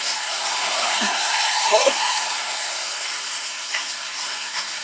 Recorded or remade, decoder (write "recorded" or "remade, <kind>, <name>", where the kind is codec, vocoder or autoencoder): remade, codec, SNAC